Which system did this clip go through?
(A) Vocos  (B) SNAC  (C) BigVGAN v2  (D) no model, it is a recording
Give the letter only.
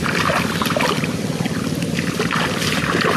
C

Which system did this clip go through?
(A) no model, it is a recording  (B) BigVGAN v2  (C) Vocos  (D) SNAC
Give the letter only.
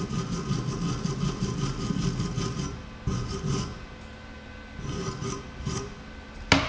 A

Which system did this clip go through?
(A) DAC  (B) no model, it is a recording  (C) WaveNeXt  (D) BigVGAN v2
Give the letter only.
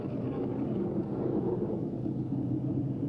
A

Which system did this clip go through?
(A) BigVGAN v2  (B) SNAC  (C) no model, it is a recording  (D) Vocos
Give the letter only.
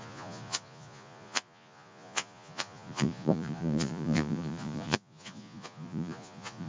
D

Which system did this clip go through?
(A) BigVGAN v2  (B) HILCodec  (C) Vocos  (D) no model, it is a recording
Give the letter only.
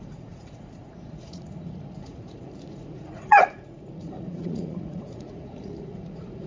C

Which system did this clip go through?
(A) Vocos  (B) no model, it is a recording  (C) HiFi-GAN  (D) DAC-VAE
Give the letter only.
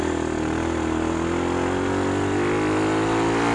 B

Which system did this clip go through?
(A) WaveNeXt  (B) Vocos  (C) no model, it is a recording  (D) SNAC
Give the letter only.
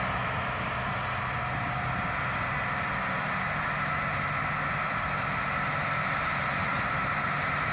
C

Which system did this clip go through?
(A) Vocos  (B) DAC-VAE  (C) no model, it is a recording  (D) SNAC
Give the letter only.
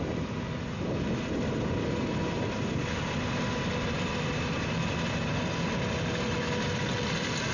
C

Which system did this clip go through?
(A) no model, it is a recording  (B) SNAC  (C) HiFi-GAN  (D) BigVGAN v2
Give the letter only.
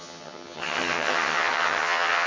C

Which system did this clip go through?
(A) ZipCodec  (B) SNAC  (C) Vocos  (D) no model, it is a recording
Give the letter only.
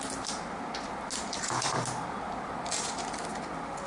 D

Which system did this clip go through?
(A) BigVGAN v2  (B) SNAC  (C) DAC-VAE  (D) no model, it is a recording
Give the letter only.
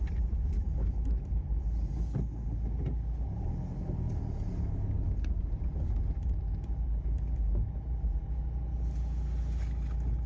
D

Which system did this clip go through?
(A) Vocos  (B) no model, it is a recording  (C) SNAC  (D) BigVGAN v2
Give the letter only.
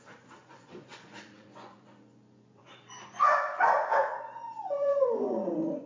A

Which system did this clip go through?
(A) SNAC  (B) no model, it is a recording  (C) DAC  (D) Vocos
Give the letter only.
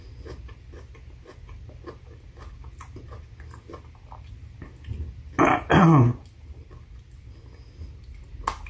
B